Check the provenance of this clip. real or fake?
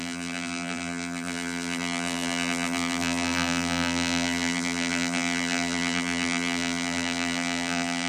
fake